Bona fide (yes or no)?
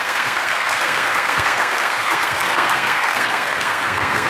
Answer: no